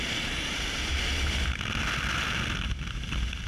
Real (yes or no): yes